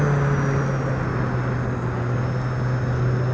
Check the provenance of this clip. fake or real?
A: real